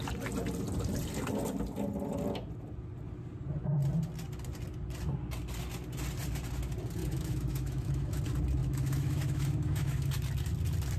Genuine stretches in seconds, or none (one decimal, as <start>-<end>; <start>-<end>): 0.0-7.0; 8.2-8.6; 10.1-11.0

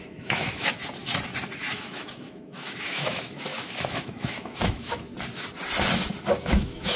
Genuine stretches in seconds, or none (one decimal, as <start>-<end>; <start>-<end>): 0.8-1.7; 5.1-6.3